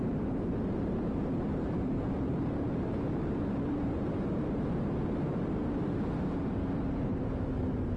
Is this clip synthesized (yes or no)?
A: yes